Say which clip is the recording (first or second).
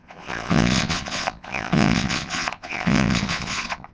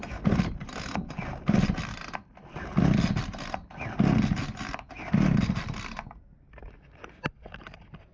second